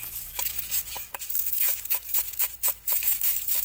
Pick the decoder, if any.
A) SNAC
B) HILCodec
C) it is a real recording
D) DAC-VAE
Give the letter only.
D